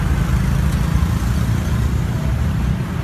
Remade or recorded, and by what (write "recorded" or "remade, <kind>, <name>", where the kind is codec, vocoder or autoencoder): recorded